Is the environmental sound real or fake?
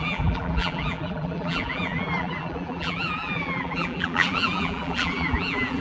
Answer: fake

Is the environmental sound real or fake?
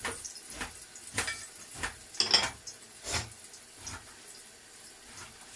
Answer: real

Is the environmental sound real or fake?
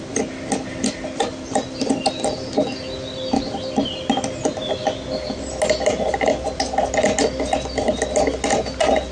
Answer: real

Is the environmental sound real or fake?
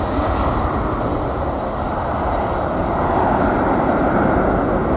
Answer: real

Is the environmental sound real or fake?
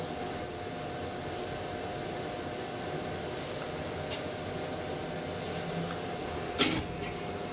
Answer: real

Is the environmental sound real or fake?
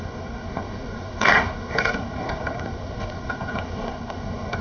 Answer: fake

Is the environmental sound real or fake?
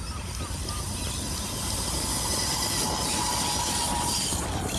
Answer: real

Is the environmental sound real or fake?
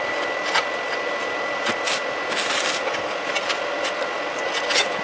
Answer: real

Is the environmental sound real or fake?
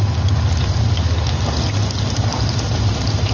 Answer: real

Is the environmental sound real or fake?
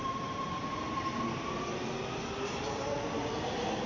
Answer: real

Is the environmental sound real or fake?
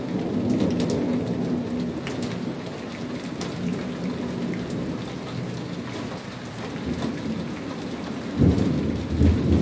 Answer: real